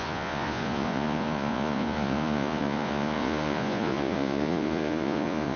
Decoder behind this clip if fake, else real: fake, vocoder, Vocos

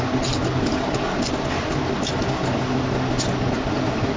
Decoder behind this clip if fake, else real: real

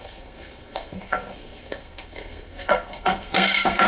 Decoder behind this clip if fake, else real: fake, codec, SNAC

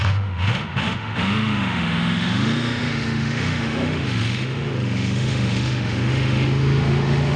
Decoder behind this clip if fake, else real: fake, autoencoder, DAC-VAE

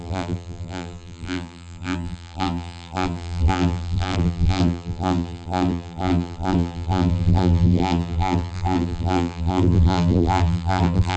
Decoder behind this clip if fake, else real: fake, vocoder, BigVGAN v2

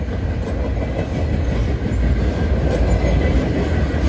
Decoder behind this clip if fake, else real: real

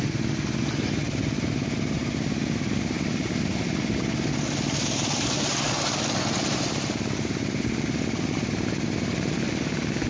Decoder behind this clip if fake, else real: real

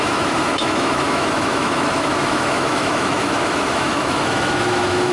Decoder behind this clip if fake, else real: fake, autoencoder, DAC-VAE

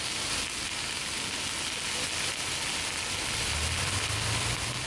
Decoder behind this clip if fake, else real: real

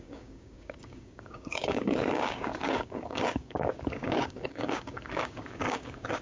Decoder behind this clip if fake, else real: fake, codec, DAC